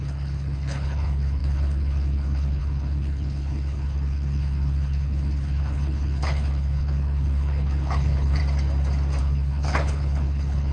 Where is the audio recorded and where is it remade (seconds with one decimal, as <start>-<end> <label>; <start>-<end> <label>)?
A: 0.0-8.4 remade; 8.4-9.2 recorded; 9.2-10.7 remade